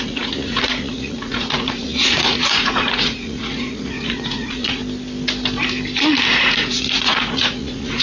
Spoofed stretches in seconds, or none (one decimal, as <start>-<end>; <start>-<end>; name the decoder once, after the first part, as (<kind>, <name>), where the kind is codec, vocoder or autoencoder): 0.0-4.8 (vocoder, Vocos); 6.3-8.0

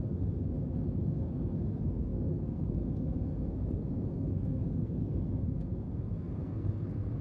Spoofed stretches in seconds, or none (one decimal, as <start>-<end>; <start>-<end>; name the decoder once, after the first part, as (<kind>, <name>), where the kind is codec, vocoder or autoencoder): 0.0-7.2 (codec, SNAC)